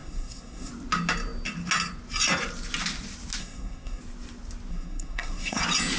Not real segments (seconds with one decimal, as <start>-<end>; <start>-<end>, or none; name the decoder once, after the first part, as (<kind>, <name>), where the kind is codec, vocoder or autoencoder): 0.0-0.7 (codec, SNAC); 3.4-4.0; 4.7-5.6